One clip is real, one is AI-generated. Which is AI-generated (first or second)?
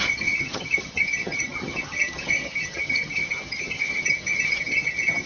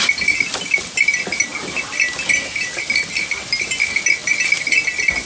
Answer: first